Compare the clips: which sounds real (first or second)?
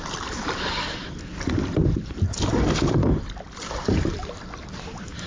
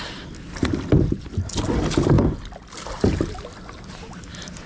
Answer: second